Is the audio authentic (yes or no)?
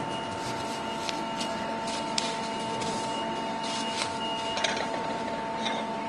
yes